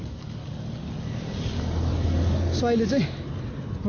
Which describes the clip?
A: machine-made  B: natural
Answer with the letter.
B